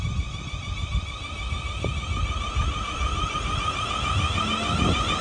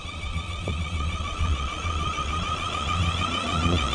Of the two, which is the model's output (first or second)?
second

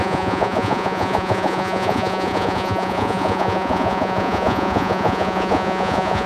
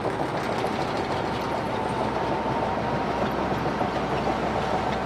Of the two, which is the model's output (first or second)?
first